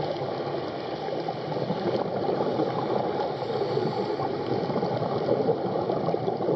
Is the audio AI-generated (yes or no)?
yes